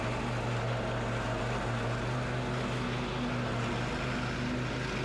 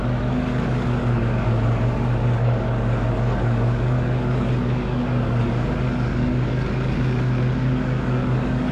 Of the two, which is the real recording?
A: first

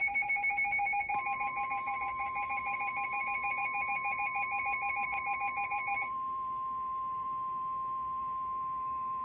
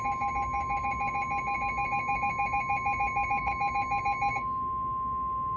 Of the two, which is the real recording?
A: second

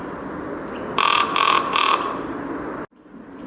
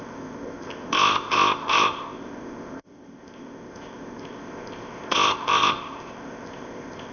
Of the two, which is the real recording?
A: first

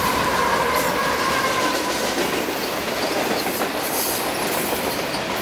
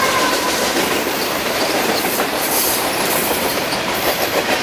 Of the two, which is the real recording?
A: first